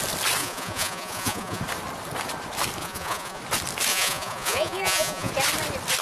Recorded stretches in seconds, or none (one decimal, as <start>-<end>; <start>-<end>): 0.0-0.4; 1.6-2.8; 3.4-3.9; 5.3-6.0